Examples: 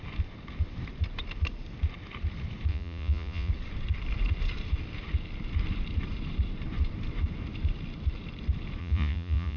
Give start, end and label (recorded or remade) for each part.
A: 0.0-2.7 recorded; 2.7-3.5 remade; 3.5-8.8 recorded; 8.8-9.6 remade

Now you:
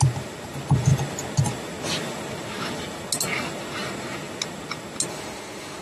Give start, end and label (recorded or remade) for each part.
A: 0.0-5.1 recorded; 5.1-5.8 remade

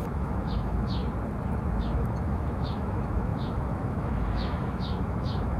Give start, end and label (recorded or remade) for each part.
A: 0.0-1.0 remade; 1.0-1.8 recorded; 1.8-5.6 remade

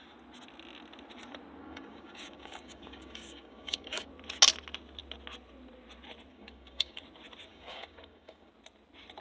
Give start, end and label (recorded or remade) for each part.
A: 0.0-1.6 recorded; 1.6-4.1 remade; 4.1-6.3 recorded; 6.3-7.0 remade; 7.0-7.5 recorded; 7.5-8.5 remade; 8.5-9.2 recorded

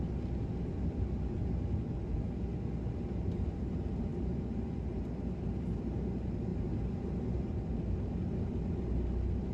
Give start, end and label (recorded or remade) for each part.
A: 0.0-4.1 recorded; 4.1-5.8 remade; 5.8-6.5 recorded; 6.5-7.5 remade; 7.5-9.5 recorded

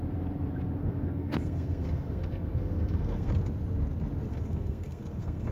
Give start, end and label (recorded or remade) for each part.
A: 0.0-0.8 recorded; 0.8-3.3 remade; 3.3-4.3 recorded; 4.3-5.5 remade

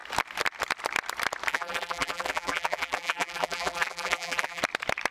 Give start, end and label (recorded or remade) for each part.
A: 0.0-1.5 recorded; 1.5-4.6 remade; 4.6-5.1 recorded